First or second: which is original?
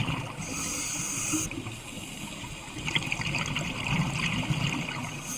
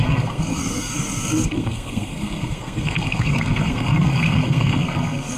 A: first